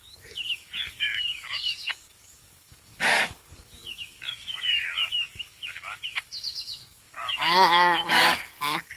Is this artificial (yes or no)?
yes